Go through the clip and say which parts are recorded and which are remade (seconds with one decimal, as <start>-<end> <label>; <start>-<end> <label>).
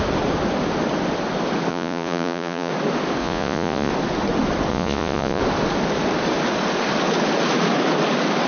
0.0-1.7 recorded; 1.7-2.7 remade; 2.7-3.2 recorded; 3.2-3.9 remade; 3.9-4.7 recorded; 4.7-5.4 remade; 5.4-8.5 recorded